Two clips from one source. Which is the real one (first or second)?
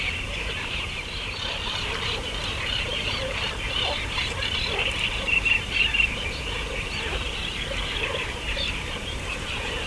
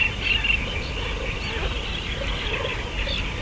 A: second